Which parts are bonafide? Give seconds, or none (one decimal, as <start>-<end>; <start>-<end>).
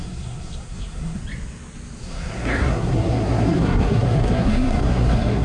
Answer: 1.2-2.0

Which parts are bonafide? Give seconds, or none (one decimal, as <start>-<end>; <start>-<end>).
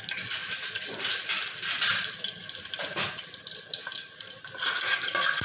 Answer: 0.0-4.0; 4.5-5.4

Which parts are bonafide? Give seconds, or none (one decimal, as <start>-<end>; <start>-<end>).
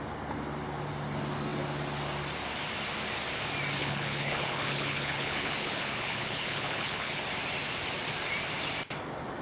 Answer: 0.0-3.8; 7.2-9.4